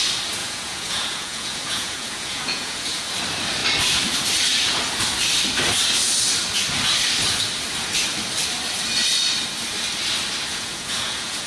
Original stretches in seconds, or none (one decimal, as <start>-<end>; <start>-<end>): 0.0-0.4; 3.1-10.5